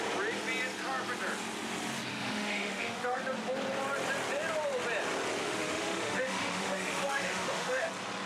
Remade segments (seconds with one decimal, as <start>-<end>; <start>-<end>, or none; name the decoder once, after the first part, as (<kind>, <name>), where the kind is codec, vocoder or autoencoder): 2.1-3.2 (autoencoder, DAC-VAE); 5.4-7.9